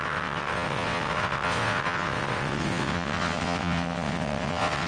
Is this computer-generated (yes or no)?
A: yes